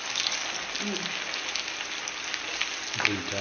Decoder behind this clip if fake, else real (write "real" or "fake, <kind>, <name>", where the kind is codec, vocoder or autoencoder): real